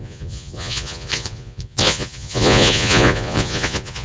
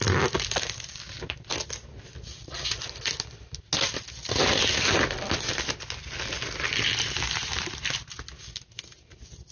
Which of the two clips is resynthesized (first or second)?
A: first